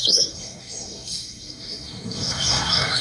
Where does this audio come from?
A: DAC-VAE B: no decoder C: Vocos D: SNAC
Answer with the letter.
D